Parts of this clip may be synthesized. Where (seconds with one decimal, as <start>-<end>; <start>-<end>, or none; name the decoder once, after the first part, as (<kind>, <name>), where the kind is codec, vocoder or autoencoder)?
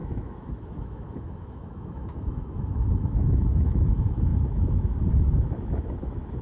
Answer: 0.0-6.4 (autoencoder, DAC-VAE)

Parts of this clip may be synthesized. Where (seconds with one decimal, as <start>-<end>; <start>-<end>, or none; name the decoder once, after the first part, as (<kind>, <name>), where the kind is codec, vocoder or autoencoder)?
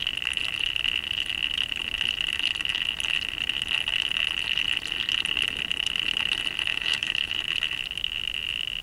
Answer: 6.7-7.3 (autoencoder, DAC-VAE)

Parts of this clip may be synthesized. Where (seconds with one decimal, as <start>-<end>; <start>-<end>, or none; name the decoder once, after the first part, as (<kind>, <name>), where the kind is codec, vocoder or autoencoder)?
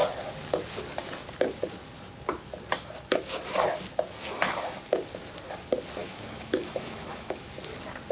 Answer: 6.0-7.5 (autoencoder, DAC-VAE)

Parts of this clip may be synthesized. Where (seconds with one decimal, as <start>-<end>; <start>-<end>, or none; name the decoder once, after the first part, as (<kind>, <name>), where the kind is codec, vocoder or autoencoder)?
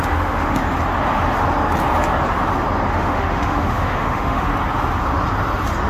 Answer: 0.0-0.6 (autoencoder, DAC-VAE); 2.9-4.5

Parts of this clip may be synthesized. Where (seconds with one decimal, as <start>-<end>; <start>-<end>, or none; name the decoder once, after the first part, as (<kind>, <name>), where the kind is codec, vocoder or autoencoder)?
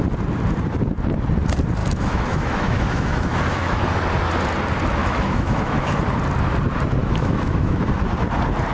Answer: 1.8-3.8 (autoencoder, DAC-VAE); 5.0-6.0; 7.0-7.8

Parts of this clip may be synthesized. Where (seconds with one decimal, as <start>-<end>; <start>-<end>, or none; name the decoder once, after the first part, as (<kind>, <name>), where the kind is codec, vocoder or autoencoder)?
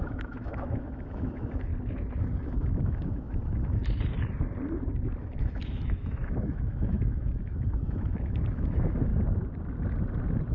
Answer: 0.0-1.7 (autoencoder, DAC-VAE); 2.2-3.8; 5.2-9.1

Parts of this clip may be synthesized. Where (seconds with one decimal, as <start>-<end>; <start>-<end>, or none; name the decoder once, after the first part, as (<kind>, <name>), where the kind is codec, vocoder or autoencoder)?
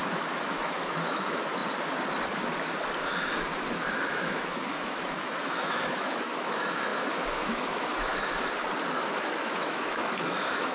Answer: 0.0-1.6 (autoencoder, DAC-VAE); 3.7-8.1; 9.2-10.7